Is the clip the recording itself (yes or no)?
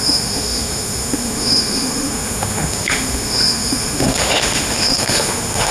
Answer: no